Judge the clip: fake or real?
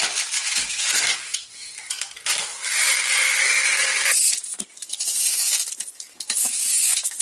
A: fake